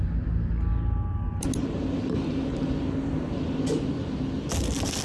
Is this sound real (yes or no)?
yes